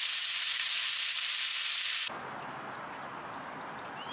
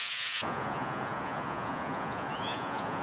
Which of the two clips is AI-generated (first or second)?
second